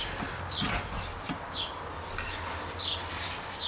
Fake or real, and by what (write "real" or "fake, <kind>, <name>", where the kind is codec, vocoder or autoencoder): real